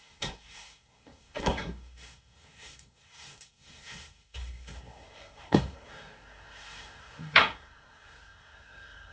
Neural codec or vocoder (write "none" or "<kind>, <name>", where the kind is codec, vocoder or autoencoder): codec, SNAC